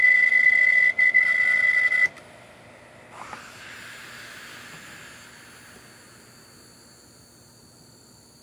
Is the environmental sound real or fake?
real